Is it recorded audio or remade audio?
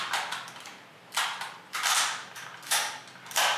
recorded